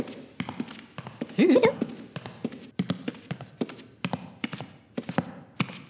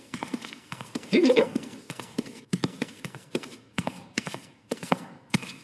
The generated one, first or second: second